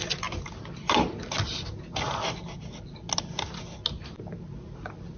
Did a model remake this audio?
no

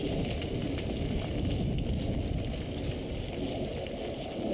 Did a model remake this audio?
no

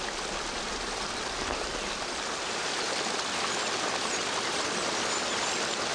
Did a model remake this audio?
no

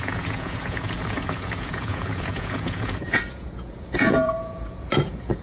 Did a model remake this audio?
yes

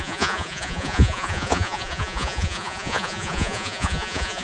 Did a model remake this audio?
yes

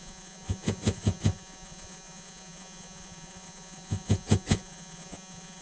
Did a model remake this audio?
yes